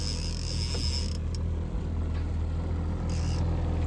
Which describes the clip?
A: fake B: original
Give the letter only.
B